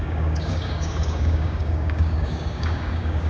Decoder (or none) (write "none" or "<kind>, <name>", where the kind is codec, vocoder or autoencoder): codec, DAC